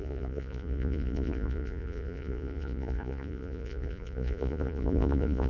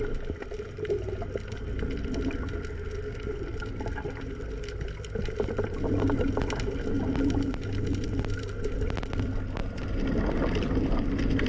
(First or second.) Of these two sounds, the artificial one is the first